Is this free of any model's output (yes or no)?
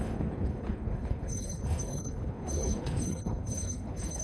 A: no